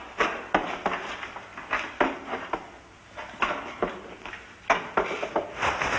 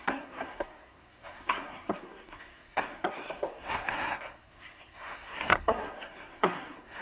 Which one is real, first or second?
first